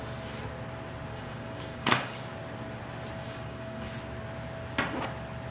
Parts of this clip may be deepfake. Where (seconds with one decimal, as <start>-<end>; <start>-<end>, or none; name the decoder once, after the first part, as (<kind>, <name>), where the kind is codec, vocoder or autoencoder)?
1.1-2.2 (codec, DAC); 3.2-3.9